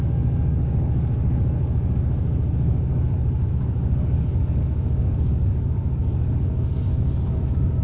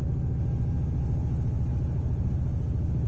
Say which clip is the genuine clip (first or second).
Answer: second